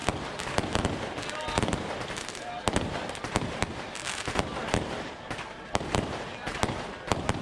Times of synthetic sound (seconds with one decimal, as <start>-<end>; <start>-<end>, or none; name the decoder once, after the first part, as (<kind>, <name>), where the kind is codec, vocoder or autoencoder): 2.2-7.4 (vocoder, BigVGAN v2)